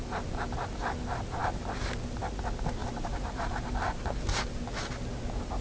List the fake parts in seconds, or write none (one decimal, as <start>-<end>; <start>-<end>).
2.8-3.5